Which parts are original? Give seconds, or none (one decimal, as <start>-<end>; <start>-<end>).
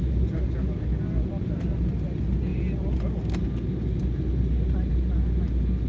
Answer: 0.0-5.9